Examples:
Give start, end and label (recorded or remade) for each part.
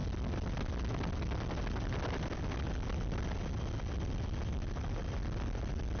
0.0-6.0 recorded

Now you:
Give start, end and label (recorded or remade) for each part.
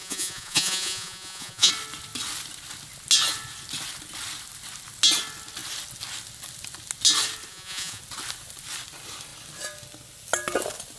0.0-1.7 remade; 1.7-7.5 recorded; 7.5-8.0 remade; 8.0-11.0 recorded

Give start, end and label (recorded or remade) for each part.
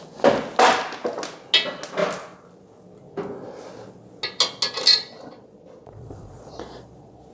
0.0-4.9 recorded; 4.9-7.3 remade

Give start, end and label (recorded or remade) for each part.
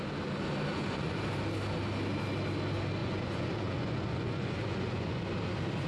0.0-0.7 recorded; 0.7-1.2 remade; 1.2-3.0 recorded; 3.0-5.2 remade; 5.2-5.9 recorded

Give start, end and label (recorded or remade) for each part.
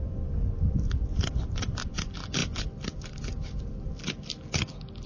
0.0-5.1 recorded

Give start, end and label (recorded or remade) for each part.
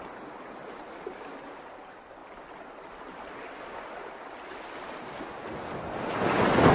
0.0-6.7 recorded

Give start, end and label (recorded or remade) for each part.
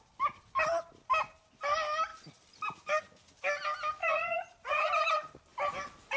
0.0-4.0 recorded; 4.0-4.9 remade; 4.9-6.2 recorded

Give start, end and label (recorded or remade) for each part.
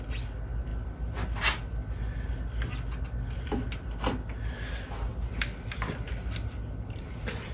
0.0-7.5 recorded